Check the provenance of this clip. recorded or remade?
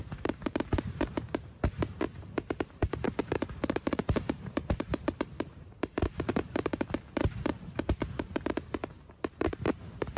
remade